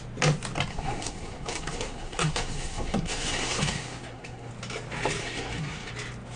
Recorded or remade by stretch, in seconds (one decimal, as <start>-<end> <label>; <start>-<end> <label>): 0.0-0.7 recorded; 0.7-4.5 remade; 4.5-5.2 recorded; 5.2-5.9 remade; 5.9-6.4 recorded